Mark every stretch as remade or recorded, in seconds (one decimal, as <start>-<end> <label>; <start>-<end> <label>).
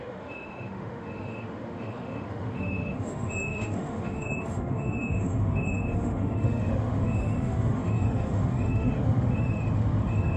0.0-10.4 remade